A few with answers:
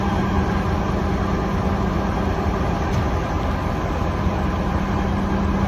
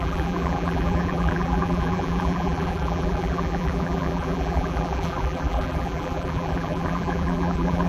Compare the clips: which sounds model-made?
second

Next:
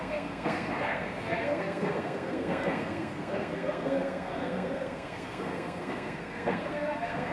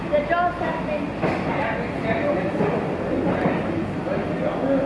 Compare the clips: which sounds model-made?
first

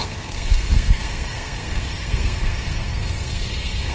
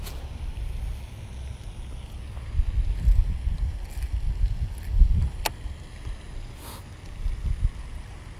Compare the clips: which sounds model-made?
first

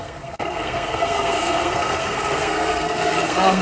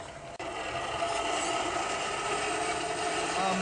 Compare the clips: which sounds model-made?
first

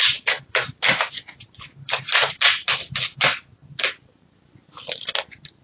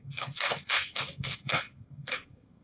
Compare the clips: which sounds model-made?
second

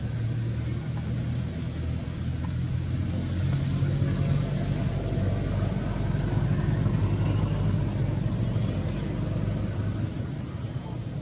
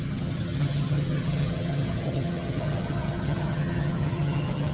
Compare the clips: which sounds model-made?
second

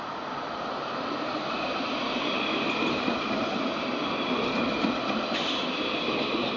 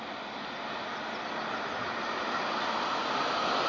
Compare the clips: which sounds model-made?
first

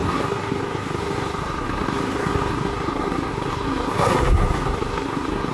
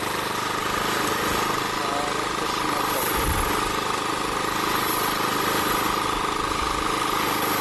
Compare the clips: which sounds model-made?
first